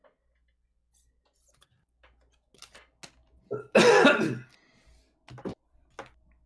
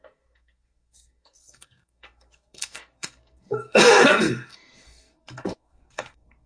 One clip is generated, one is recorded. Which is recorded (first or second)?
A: first